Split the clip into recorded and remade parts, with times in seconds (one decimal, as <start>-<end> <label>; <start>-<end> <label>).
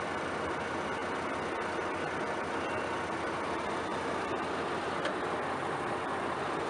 0.0-6.7 recorded